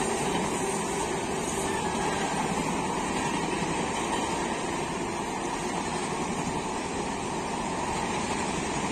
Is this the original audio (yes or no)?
yes